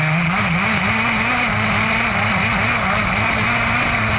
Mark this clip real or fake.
real